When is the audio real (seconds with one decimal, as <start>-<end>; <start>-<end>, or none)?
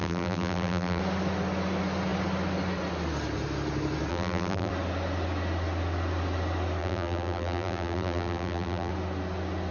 1.0-4.1; 4.7-6.8; 8.9-9.7